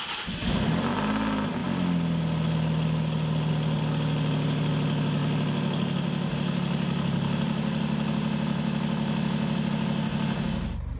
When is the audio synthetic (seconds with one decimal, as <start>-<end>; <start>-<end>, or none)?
none